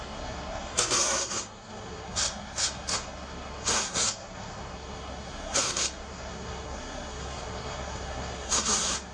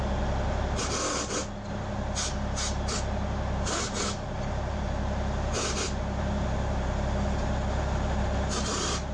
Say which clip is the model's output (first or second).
first